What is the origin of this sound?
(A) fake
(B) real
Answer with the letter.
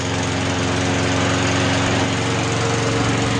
B